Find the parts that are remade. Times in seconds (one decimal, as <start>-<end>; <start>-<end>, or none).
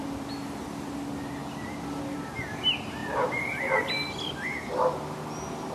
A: 1.4-2.0; 3.0-3.9